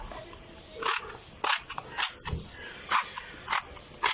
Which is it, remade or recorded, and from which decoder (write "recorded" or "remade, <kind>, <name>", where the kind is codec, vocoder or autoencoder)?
recorded